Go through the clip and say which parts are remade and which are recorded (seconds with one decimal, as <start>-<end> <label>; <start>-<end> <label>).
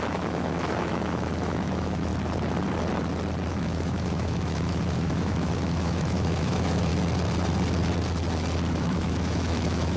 0.0-2.1 remade; 2.1-3.5 recorded; 3.5-6.9 remade; 6.9-8.7 recorded; 8.7-10.0 remade